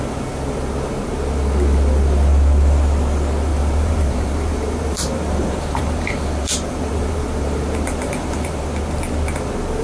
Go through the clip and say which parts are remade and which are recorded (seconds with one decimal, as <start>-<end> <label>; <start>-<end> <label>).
0.0-3.5 recorded; 3.5-8.6 remade; 8.6-9.8 recorded